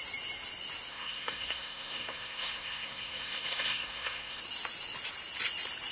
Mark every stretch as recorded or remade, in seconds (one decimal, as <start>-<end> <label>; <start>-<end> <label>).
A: 0.0-0.9 recorded; 0.9-4.4 remade; 4.4-5.9 recorded